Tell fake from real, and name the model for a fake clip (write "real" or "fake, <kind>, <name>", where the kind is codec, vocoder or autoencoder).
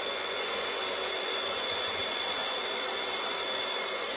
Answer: fake, vocoder, Vocos